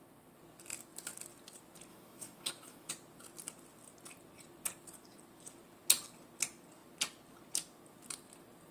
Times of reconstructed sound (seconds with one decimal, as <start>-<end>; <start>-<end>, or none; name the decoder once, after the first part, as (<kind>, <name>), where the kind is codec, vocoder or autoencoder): 1.9-2.9 (autoencoder, DAC-VAE)